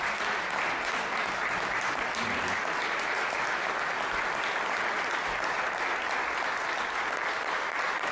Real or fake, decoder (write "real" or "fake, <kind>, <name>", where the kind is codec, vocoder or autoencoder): real